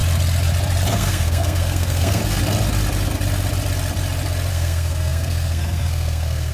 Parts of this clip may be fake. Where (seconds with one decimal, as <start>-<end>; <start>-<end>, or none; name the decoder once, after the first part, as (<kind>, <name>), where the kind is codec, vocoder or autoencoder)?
0.9-2.2 (codec, SNAC); 4.5-6.5